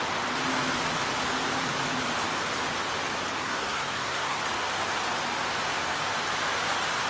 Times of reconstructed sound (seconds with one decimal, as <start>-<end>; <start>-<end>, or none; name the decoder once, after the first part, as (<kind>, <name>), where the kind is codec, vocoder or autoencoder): 3.4-4.4 (codec, SNAC)